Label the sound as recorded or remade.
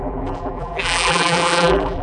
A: remade